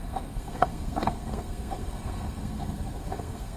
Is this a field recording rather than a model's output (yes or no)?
no